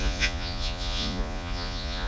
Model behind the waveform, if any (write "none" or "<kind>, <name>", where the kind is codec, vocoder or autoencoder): vocoder, Vocos